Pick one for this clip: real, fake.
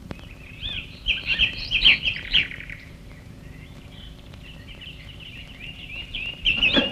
fake